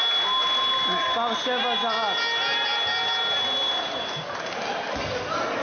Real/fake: real